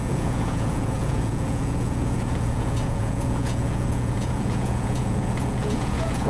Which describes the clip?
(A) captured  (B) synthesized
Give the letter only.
B